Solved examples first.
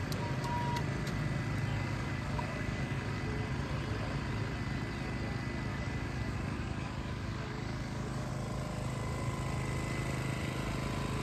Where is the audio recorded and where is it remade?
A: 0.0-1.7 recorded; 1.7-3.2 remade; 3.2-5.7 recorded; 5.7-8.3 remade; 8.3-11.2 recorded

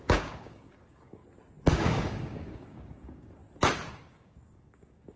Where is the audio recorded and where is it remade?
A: 0.0-1.2 remade; 1.2-1.7 recorded; 1.7-3.4 remade; 3.4-4.0 recorded; 4.0-5.2 remade

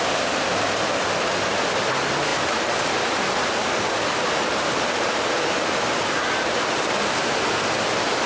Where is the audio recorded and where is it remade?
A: 0.0-8.3 recorded

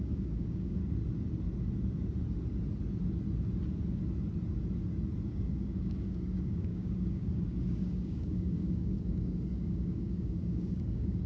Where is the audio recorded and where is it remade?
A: 0.0-0.8 remade; 0.8-5.3 recorded; 5.3-11.3 remade

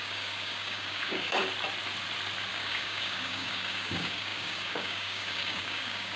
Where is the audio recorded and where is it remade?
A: 0.0-1.4 remade; 1.4-2.5 recorded; 2.5-6.2 remade